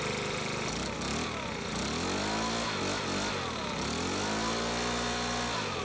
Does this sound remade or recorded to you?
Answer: recorded